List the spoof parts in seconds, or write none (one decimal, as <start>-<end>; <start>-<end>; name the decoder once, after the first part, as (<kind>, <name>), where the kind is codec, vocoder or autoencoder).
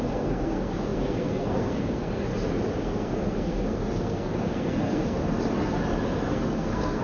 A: 0.0-2.3 (codec, SNAC); 2.8-5.2; 6.3-7.0